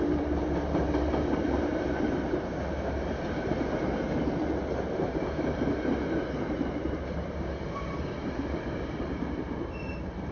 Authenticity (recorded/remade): remade